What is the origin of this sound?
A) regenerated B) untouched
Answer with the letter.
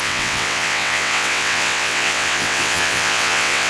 A